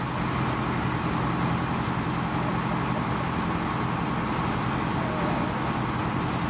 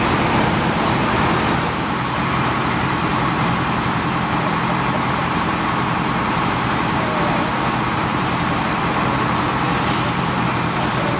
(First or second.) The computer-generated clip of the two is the second